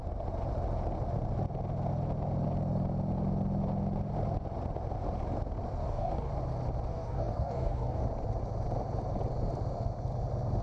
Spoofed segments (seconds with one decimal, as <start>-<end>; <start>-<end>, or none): 5.8-6.3; 6.9-8.0